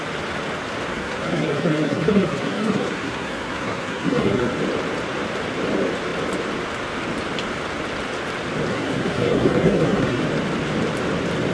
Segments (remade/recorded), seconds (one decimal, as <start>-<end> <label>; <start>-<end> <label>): 0.0-0.9 recorded; 0.9-4.5 remade; 4.5-8.7 recorded; 8.7-10.2 remade; 10.2-11.5 recorded